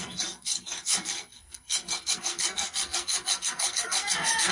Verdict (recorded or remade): remade